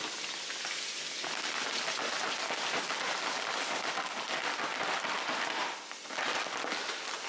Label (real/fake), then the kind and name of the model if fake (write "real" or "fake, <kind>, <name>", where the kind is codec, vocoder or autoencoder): real